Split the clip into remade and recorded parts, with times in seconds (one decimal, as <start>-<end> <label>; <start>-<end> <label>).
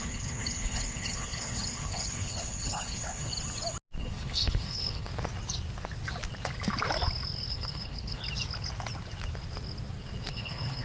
0.0-3.3 remade; 3.3-4.0 recorded; 4.0-5.1 remade; 5.1-7.5 recorded; 7.5-8.2 remade; 8.2-10.3 recorded; 10.3-10.8 remade